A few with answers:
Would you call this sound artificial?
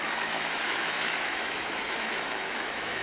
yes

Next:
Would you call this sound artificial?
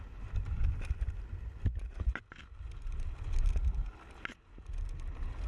no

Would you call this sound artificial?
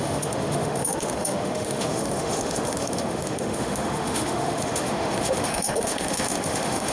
yes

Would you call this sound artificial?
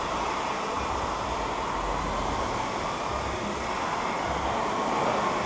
no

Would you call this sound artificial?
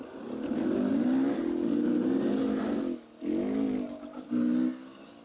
no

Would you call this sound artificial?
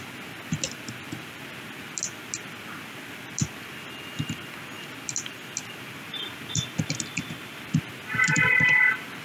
no